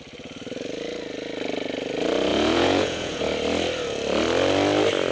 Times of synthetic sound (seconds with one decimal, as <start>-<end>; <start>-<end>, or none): 2.3-3.2